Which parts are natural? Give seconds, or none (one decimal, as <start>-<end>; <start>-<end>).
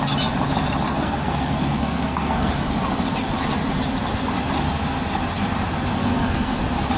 0.0-0.9; 2.5-5.9; 6.6-7.0